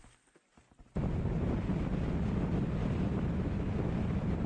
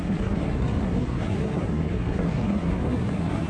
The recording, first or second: first